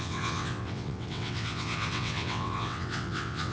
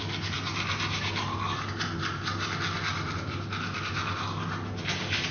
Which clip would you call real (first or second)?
second